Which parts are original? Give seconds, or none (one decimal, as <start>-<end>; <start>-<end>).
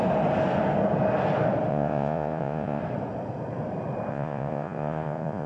0.0-1.7; 2.8-4.1